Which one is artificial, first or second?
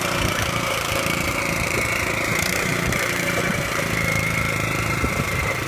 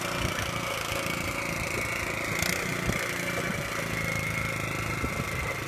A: first